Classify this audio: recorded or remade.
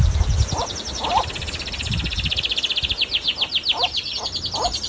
recorded